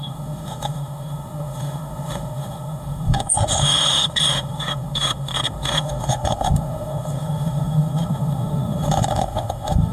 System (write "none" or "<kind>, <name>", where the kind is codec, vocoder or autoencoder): autoencoder, DAC-VAE